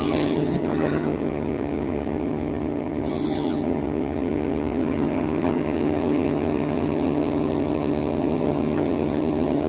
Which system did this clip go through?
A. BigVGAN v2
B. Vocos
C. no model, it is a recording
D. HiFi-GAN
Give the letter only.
D